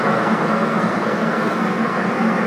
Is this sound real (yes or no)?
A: no